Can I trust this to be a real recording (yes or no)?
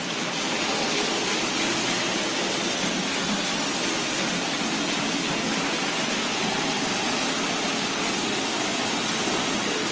yes